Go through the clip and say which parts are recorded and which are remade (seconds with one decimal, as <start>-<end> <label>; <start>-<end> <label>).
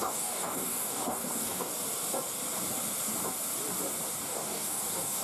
0.0-1.7 remade; 1.7-4.2 recorded; 4.2-5.2 remade